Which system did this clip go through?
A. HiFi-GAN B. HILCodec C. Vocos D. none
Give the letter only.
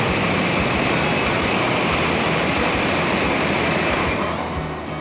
D